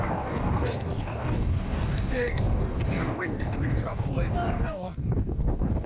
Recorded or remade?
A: remade